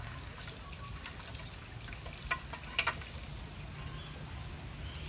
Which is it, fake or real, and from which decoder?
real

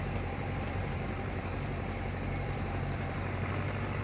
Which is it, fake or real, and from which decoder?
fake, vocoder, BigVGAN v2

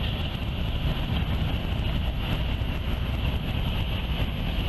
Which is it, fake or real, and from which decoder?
real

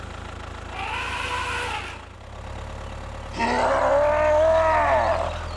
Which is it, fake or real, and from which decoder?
real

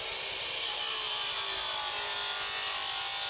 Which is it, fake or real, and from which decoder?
real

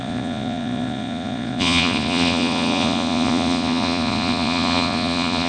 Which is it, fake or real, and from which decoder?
fake, vocoder, Vocos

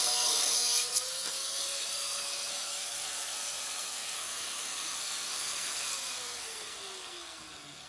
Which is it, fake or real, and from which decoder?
fake, codec, SNAC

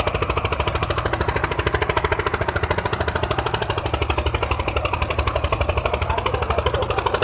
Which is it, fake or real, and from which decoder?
fake, vocoder, BigVGAN v2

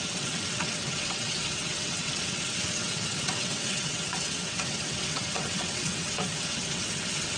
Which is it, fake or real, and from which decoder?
fake, vocoder, WaveNeXt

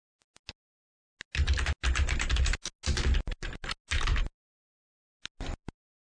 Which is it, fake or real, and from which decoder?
real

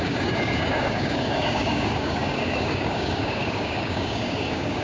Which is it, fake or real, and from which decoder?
fake, codec, DAC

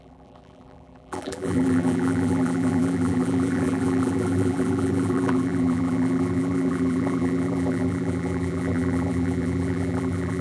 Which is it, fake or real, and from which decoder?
fake, vocoder, BigVGAN v2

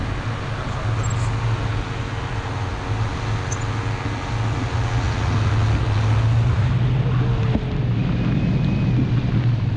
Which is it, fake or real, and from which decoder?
real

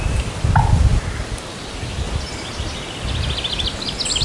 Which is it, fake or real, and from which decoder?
real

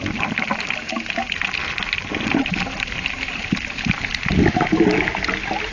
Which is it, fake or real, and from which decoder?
real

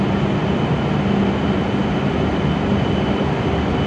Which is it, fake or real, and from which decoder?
real